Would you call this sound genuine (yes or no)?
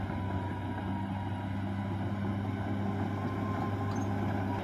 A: yes